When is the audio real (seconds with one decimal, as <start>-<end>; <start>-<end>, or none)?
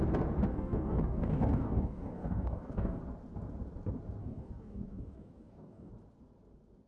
0.0-0.5; 3.0-4.2; 5.9-6.9